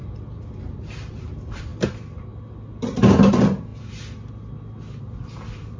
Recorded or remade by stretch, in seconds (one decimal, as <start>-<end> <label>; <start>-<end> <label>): 0.0-0.5 recorded; 0.5-1.7 remade; 1.7-3.3 recorded; 3.3-3.7 remade; 3.7-5.0 recorded; 5.0-5.8 remade